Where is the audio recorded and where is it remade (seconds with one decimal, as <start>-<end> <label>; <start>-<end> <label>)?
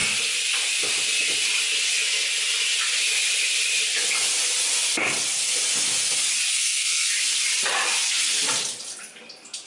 0.0-6.5 recorded; 6.5-7.1 remade; 7.1-9.7 recorded